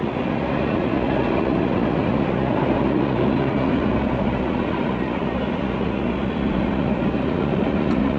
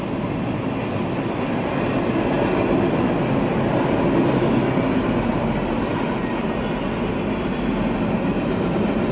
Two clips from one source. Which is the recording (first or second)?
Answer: second